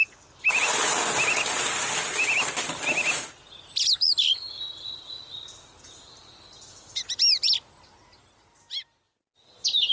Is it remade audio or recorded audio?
recorded